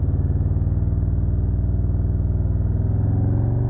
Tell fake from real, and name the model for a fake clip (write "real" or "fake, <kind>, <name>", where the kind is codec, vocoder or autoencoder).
real